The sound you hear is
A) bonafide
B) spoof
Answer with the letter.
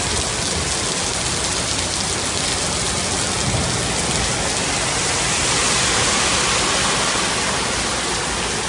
A